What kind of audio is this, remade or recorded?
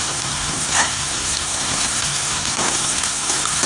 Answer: remade